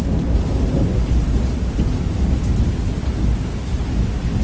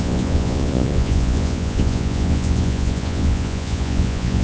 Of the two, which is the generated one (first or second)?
second